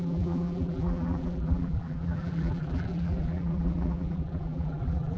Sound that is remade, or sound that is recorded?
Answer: remade